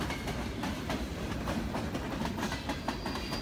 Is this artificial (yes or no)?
no